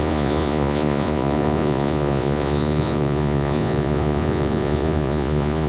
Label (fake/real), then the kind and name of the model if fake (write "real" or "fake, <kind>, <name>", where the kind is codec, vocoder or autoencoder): fake, vocoder, Vocos